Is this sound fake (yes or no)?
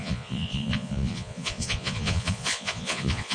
yes